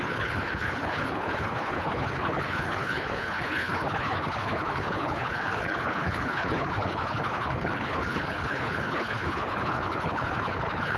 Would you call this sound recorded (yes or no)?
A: no